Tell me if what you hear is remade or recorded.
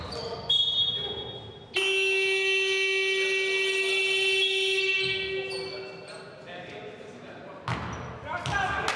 recorded